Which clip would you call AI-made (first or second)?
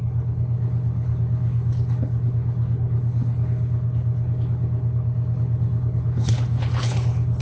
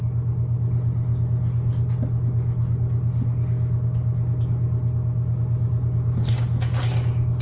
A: first